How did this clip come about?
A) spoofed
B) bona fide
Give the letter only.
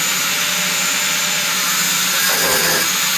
B